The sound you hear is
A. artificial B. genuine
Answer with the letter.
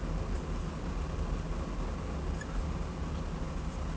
B